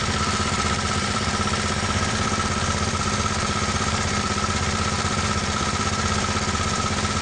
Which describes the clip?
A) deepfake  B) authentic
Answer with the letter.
A